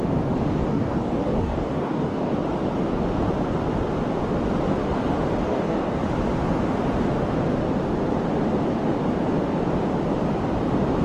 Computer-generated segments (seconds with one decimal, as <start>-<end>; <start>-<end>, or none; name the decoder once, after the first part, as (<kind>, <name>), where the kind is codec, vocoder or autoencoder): 0.6-2.3 (codec, DAC); 5.5-6.0